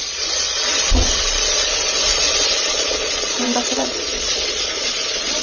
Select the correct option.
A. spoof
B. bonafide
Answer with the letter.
A